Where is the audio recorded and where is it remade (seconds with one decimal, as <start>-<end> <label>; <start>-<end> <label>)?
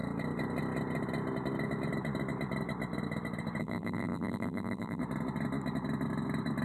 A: 0.0-3.6 recorded; 3.6-5.0 remade; 5.0-6.6 recorded